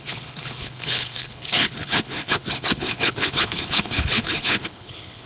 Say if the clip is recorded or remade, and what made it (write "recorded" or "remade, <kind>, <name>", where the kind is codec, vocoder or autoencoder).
remade, codec, HILCodec